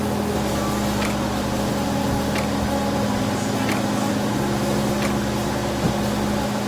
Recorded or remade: recorded